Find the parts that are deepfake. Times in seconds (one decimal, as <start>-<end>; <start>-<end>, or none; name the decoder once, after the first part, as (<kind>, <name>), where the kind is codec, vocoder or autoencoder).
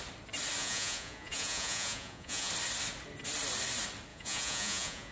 0.6-2.5 (vocoder, Vocos); 4.1-5.1